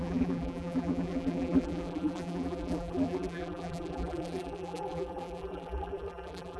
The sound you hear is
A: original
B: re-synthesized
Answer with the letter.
B